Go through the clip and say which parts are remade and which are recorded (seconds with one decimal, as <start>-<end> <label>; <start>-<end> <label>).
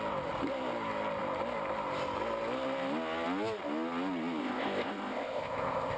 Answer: 0.0-4.4 recorded; 4.4-6.0 remade